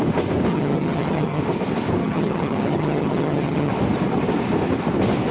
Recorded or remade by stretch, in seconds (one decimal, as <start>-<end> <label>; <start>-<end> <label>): 0.0-0.5 recorded; 0.5-1.4 remade; 1.4-2.0 recorded; 2.0-3.7 remade; 3.7-5.3 recorded